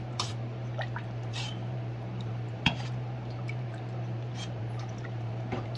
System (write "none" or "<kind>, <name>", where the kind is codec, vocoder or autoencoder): vocoder, BigVGAN v2